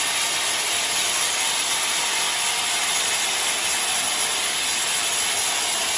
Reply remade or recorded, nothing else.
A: recorded